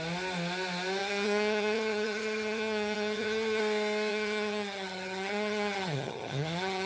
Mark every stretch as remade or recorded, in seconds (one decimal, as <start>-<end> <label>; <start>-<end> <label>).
0.0-1.0 recorded; 1.0-3.6 remade; 3.6-4.1 recorded; 4.1-6.9 remade